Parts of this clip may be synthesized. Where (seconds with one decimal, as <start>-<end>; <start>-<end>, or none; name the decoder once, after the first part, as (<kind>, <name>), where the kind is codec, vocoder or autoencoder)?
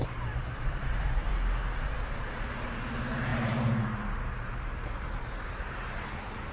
0.0-1.3 (vocoder, BigVGAN v2); 1.8-6.5